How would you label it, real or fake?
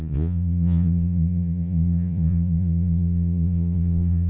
fake